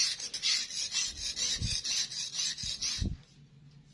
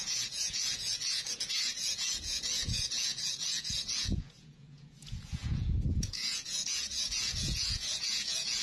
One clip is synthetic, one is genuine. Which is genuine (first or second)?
first